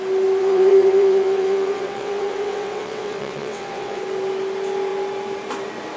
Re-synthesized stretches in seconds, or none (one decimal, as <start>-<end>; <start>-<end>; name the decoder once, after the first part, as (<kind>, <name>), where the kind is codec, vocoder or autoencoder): 0.4-4.0 (vocoder, WaveNeXt)